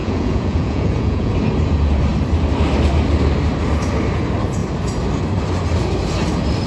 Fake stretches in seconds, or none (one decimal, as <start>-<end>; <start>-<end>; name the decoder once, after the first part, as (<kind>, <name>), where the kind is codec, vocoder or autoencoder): 0.0-1.3 (vocoder, Vocos)

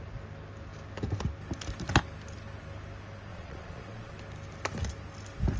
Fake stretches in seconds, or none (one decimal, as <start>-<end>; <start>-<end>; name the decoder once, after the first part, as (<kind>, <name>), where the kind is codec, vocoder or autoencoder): 3.3-4.1 (vocoder, Vocos)

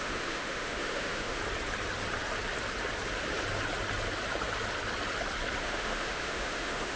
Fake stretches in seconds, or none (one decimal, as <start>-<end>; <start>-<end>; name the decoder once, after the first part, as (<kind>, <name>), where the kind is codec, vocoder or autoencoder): 0.0-1.4 (autoencoder, DAC-VAE); 5.6-7.0